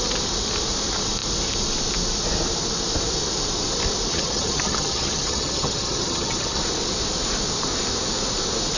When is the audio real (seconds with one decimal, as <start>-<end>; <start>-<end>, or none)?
0.0-4.1; 6.6-8.8